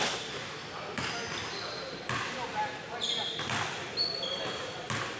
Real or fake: real